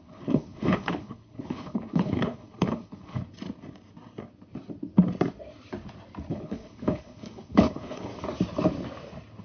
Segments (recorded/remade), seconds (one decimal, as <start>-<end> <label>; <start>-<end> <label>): 0.0-3.2 remade; 3.2-6.3 recorded; 6.3-8.1 remade; 8.1-9.4 recorded